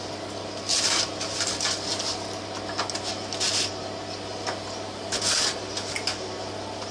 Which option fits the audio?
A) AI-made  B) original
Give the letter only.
B